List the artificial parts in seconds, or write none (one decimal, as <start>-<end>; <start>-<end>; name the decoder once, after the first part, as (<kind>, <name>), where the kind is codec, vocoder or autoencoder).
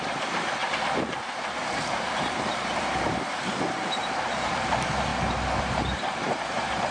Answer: 0.0-5.1 (vocoder, BigVGAN v2); 5.6-6.9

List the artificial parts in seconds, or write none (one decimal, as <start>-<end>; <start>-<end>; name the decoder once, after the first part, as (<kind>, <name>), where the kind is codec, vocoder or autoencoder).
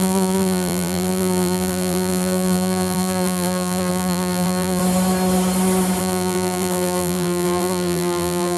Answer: 0.0-4.8 (vocoder, BigVGAN v2); 6.0-8.6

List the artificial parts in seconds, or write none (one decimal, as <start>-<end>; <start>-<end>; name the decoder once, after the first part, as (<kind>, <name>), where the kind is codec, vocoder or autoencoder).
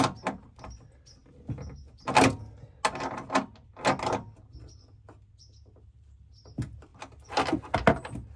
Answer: none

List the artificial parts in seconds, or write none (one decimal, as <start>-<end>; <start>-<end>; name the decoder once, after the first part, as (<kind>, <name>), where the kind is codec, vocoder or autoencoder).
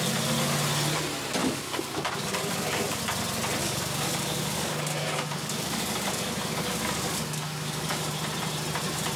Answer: 1.4-3.0 (codec, DAC); 3.6-8.1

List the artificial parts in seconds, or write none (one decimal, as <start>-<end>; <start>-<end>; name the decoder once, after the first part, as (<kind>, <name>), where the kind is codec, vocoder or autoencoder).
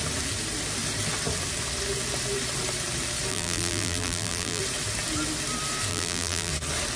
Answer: 3.3-4.6 (vocoder, BigVGAN v2); 5.9-6.5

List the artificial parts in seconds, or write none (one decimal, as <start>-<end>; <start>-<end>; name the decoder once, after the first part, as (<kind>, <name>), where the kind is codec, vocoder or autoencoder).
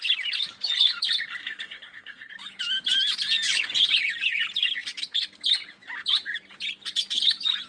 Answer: 1.4-2.3 (codec, SNAC)